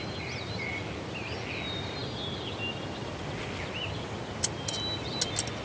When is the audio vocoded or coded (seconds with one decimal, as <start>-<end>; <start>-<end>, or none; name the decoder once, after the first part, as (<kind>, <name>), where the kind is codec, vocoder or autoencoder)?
none